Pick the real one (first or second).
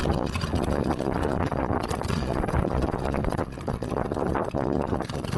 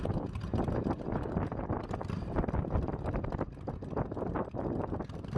second